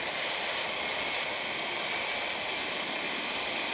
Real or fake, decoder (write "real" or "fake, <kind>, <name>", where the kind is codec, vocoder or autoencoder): real